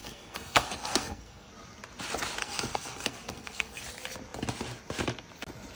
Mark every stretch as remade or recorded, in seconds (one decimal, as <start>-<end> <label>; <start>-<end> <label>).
0.0-1.5 remade; 1.5-2.4 recorded; 2.4-3.8 remade; 3.8-5.7 recorded